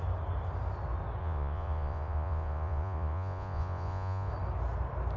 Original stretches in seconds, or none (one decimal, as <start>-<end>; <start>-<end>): 0.0-1.2; 4.3-5.2